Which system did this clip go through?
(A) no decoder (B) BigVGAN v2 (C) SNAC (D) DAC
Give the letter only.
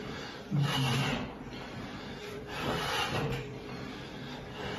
B